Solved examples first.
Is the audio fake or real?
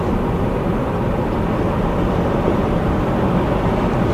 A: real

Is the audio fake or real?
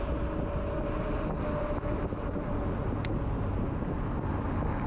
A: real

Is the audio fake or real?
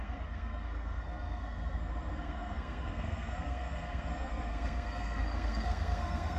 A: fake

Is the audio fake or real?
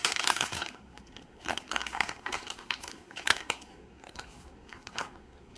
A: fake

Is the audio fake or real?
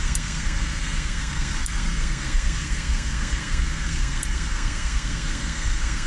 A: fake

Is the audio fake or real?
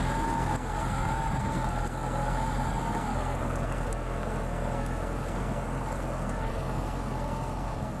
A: fake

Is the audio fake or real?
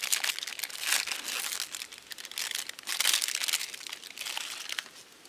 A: real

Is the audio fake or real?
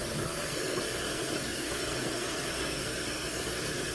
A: fake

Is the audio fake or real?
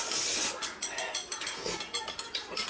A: real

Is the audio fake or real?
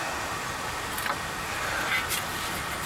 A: real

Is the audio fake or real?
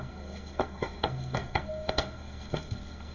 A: fake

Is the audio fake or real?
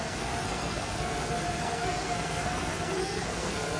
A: fake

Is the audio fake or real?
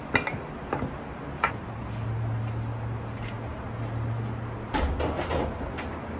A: real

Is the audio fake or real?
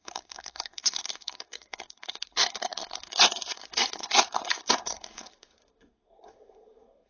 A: fake